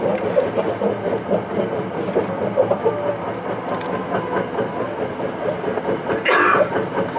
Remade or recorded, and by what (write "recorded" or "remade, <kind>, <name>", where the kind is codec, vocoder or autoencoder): recorded